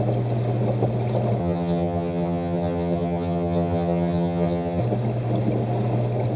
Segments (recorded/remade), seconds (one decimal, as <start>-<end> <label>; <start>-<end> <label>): 0.0-1.4 recorded; 1.4-4.8 remade; 4.8-6.4 recorded